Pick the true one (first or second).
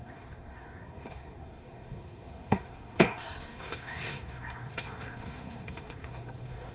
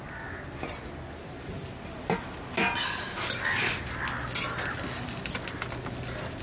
second